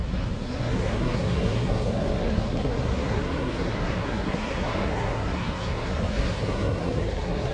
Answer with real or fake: fake